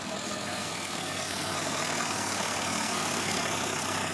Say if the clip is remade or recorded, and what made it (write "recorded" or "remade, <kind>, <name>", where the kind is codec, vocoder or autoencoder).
remade, codec, SNAC